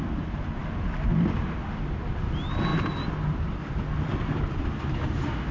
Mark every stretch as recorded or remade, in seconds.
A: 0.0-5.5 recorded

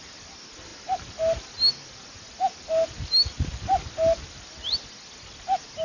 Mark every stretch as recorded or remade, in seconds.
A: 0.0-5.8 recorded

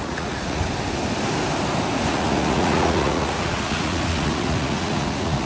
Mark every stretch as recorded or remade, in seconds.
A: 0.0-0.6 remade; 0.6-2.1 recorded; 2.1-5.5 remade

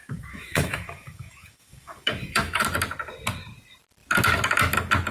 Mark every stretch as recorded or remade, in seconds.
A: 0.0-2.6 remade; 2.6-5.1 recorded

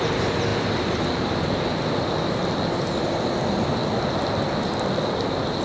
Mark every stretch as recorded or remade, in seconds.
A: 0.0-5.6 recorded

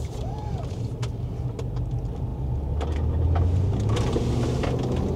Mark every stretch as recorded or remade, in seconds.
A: 0.0-5.2 recorded

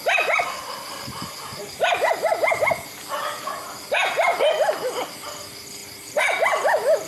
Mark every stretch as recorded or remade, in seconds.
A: 0.0-1.6 recorded; 1.6-2.5 remade; 2.5-4.3 recorded; 4.3-4.9 remade; 4.9-5.8 recorded; 5.8-7.1 remade

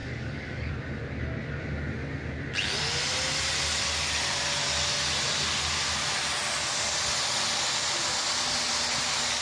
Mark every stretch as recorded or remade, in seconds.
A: 0.0-0.7 remade; 0.7-9.4 recorded